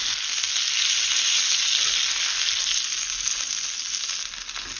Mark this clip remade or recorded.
recorded